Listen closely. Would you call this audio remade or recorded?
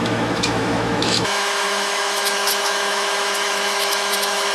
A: remade